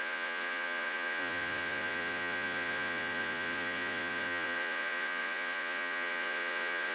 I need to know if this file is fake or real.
fake